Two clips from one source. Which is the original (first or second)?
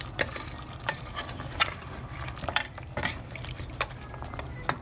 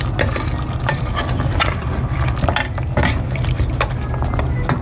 second